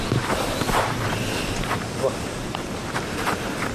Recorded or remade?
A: remade